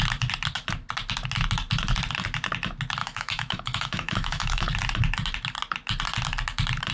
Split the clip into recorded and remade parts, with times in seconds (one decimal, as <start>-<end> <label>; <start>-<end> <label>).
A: 0.0-3.0 recorded; 3.0-4.7 remade; 4.7-6.9 recorded